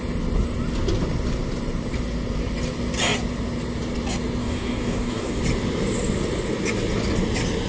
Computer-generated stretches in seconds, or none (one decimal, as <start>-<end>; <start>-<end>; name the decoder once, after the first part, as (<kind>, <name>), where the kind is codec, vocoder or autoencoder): 4.4-5.4 (codec, DAC)